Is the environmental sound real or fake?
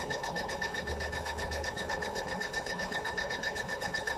fake